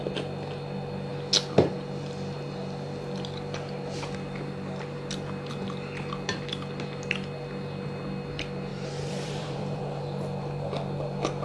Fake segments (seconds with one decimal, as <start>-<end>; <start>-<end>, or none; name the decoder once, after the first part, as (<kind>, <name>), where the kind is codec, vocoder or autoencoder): 8.7-9.8 (vocoder, BigVGAN v2)

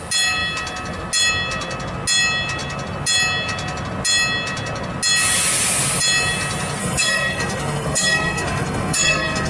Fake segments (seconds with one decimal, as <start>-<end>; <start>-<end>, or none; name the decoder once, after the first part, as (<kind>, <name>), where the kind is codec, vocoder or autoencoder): 6.8-9.5 (codec, SNAC)

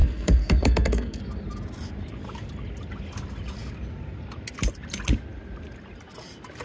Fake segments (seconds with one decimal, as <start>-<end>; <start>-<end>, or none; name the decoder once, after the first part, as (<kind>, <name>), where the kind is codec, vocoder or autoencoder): 0.0-1.2 (codec, SNAC)

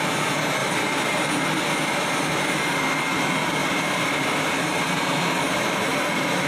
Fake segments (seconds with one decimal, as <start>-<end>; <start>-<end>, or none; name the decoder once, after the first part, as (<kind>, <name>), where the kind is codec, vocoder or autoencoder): 0.6-1.3 (vocoder, BigVGAN v2); 3.6-5.2